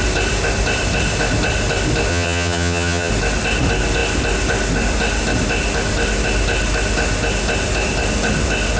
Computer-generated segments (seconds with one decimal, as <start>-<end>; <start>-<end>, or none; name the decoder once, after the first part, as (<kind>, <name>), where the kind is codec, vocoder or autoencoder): 2.1-3.1 (vocoder, HiFi-GAN)